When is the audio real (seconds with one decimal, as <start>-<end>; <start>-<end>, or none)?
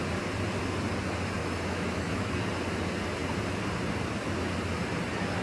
0.0-1.4; 2.3-5.4